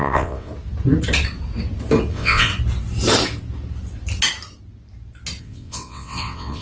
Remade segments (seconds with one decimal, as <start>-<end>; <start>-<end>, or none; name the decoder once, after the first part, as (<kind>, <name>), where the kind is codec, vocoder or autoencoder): 0.0-0.5 (vocoder, WaveNeXt); 2.1-2.5; 5.4-6.6